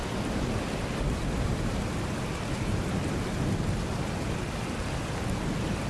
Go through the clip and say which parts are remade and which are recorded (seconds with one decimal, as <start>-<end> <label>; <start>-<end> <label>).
0.0-5.9 recorded